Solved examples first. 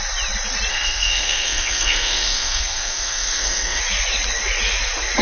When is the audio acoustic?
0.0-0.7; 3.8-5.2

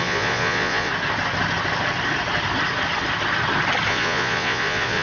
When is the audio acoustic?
0.9-3.9

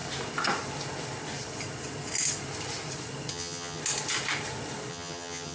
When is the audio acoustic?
0.0-3.3; 3.8-4.9